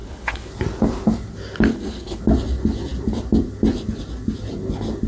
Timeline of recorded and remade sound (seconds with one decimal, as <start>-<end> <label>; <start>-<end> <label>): 0.0-0.5 remade; 0.5-1.7 recorded; 1.7-2.2 remade; 2.2-5.1 recorded